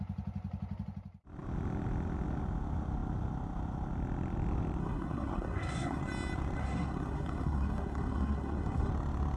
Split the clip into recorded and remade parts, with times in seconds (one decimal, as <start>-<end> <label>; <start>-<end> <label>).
0.0-4.8 recorded; 4.8-6.0 remade; 6.0-6.6 recorded; 6.6-8.9 remade; 8.9-9.4 recorded